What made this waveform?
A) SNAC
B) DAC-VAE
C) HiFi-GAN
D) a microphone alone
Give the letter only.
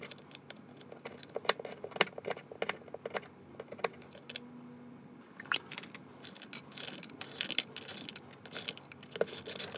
D